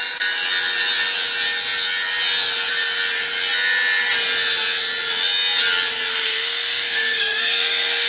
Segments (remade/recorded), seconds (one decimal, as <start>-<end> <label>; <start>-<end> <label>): 0.0-6.1 recorded; 6.1-8.1 remade